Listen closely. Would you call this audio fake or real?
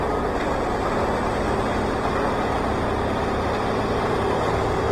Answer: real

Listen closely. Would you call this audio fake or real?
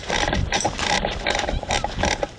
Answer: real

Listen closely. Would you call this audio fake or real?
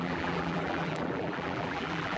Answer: fake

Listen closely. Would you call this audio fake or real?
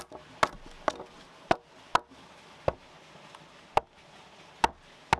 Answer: real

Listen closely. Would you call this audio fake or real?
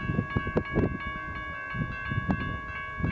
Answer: real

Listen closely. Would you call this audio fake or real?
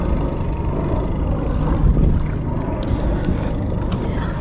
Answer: real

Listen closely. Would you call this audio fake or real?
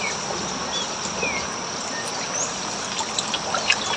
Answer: real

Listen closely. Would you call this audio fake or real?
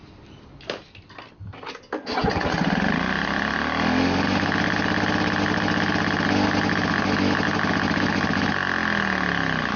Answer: real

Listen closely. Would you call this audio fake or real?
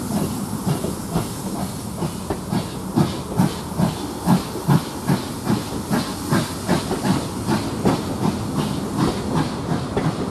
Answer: real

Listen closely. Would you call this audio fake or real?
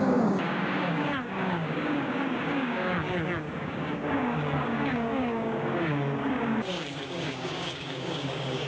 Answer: fake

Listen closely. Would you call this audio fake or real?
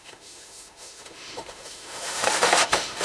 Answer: fake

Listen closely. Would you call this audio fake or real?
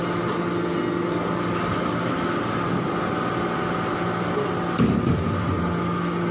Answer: real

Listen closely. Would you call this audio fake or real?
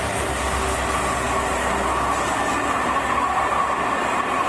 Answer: real